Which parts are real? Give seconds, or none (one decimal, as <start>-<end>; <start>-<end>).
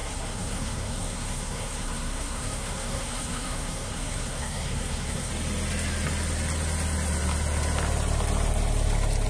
5.3-9.3